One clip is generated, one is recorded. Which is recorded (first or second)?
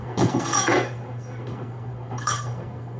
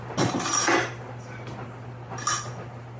second